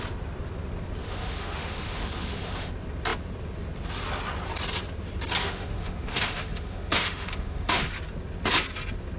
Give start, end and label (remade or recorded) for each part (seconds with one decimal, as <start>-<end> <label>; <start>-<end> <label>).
0.0-1.0 recorded; 1.0-2.7 remade; 2.7-5.4 recorded; 5.4-7.9 remade; 7.9-9.2 recorded